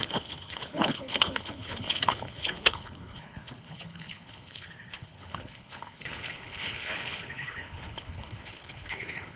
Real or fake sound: fake